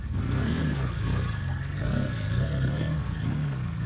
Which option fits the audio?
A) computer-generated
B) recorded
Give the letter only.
A